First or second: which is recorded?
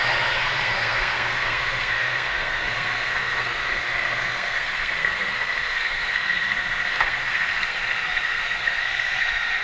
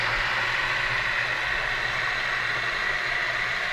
second